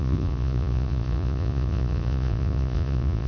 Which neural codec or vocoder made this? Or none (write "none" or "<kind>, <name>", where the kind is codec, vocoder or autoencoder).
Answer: vocoder, Vocos